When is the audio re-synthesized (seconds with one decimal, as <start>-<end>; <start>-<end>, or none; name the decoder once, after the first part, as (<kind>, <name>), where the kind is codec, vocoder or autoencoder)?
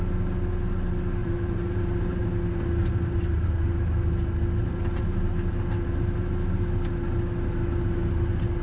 1.2-2.3 (vocoder, BigVGAN v2); 2.8-3.5